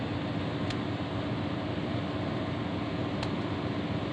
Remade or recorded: recorded